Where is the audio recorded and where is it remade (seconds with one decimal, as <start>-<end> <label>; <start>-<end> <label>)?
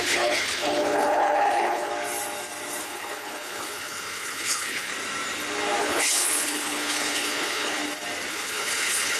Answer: 0.0-1.9 remade; 1.9-2.8 recorded; 2.8-4.9 remade; 4.9-5.8 recorded; 5.8-7.8 remade; 7.8-8.3 recorded; 8.3-9.2 remade